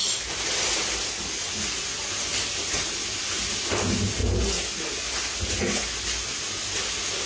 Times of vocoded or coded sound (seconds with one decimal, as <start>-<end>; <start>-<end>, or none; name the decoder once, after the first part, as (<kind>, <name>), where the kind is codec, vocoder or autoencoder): none